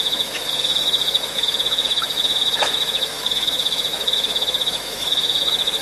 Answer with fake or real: fake